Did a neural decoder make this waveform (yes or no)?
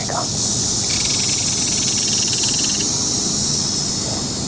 no